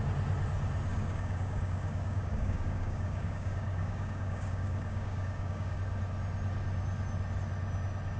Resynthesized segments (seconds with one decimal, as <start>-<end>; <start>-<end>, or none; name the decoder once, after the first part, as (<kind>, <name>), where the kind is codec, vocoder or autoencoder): 0.9-5.8 (codec, DAC)